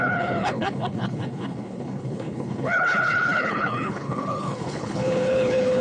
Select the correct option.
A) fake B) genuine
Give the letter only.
A